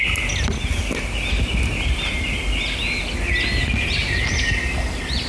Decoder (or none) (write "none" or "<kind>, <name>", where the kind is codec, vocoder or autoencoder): none